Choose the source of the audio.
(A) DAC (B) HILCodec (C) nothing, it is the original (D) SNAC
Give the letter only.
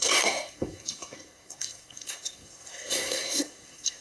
D